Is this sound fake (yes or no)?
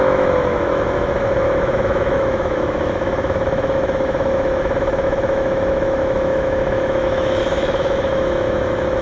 yes